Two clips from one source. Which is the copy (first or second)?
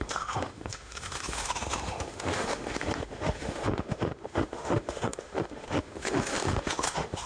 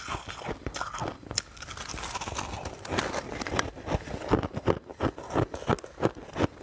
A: first